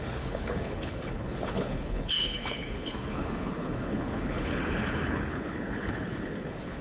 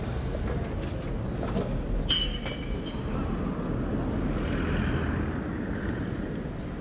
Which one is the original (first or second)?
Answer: second